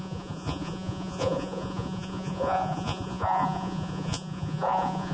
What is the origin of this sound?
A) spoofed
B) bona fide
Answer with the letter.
A